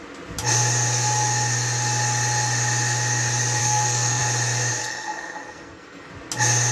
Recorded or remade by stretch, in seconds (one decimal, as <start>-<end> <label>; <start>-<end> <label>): 0.0-3.6 recorded; 3.6-4.2 remade; 4.2-4.8 recorded; 4.8-6.1 remade; 6.1-6.7 recorded